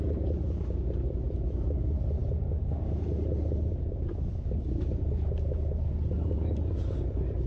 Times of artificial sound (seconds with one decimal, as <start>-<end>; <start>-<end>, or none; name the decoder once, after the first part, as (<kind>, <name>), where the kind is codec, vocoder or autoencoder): none